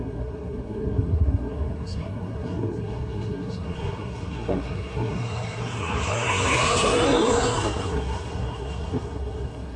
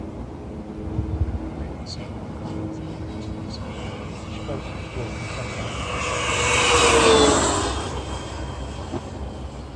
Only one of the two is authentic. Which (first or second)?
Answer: second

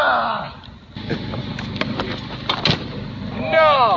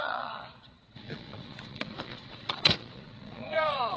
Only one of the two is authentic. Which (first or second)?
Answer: first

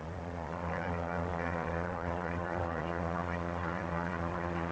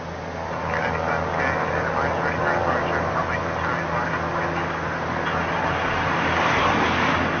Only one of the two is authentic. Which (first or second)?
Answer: second